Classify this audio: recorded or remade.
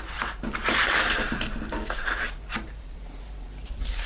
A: remade